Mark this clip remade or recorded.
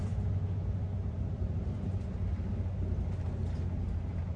recorded